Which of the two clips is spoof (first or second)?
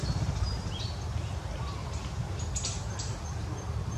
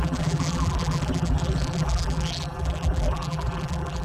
second